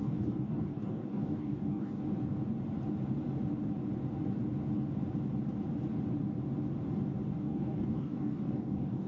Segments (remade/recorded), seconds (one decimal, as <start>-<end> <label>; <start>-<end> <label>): 0.0-2.0 remade; 2.0-7.3 recorded; 7.3-9.1 remade